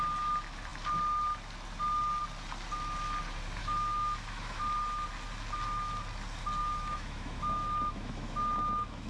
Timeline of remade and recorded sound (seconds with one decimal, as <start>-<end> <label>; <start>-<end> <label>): 0.0-3.6 recorded; 3.6-4.6 remade; 4.6-6.6 recorded; 6.6-9.1 remade